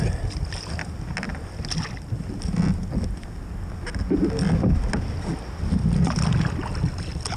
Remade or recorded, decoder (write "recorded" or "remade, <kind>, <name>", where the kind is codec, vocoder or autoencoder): recorded